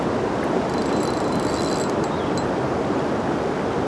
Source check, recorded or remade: recorded